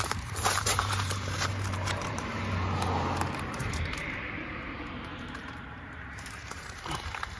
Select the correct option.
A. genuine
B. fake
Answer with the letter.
B